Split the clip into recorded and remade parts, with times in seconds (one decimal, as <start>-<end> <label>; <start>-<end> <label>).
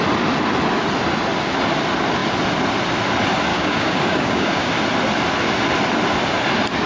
0.0-3.5 recorded; 3.5-4.7 remade; 4.7-6.9 recorded